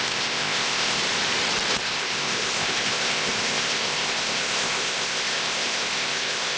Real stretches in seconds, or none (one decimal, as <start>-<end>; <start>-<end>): 1.0-1.7

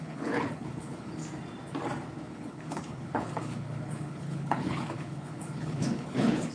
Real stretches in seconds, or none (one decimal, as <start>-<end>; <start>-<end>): 1.2-2.3

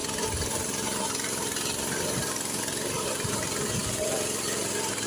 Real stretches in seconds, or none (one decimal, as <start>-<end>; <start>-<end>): 3.1-5.1

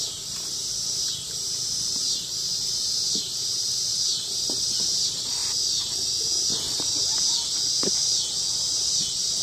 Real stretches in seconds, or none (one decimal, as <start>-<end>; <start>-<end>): 5.4-9.0

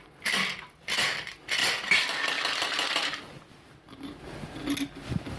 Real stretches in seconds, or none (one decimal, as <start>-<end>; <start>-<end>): 0.0-5.4

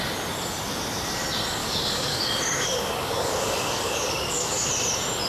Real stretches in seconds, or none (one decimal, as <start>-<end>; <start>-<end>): 0.0-1.6; 4.7-5.3

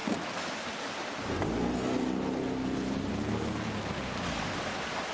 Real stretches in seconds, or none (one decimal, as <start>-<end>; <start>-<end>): 0.0-5.1